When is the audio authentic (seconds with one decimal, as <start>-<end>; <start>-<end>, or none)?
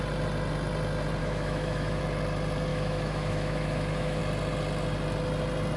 0.0-1.2; 2.0-2.7; 4.2-5.8